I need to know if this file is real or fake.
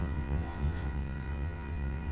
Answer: fake